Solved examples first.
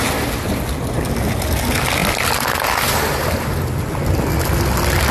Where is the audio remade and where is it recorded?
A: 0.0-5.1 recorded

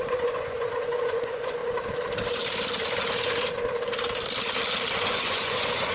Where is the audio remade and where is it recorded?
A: 0.0-1.6 remade; 1.6-5.0 recorded; 5.0-5.9 remade